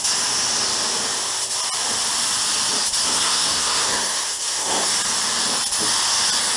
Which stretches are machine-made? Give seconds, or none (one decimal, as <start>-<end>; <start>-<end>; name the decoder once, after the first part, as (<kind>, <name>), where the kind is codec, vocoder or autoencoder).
3.0-4.9 (codec, SNAC)